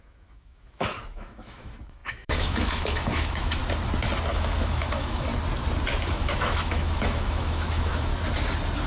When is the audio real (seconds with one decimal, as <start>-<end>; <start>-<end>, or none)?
3.6-4.3; 5.3-6.1; 8.1-8.9